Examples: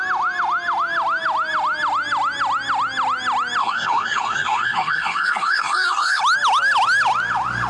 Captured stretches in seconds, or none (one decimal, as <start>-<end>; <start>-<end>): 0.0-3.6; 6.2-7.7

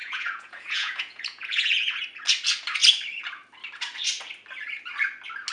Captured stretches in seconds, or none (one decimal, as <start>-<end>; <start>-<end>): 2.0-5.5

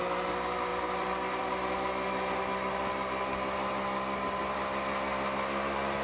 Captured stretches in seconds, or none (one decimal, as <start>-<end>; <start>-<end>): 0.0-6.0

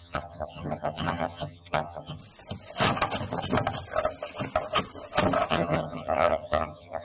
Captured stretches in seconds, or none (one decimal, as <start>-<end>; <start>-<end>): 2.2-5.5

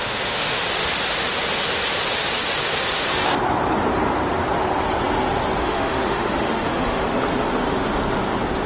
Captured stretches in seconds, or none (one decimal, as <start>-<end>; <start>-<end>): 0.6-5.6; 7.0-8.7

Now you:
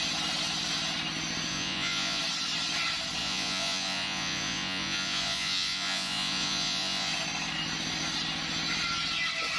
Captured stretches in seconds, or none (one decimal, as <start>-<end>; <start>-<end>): 0.0-1.5; 2.2-3.2; 7.1-9.6

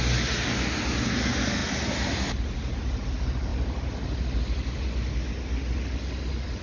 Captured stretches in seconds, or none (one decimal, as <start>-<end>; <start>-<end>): 0.0-6.6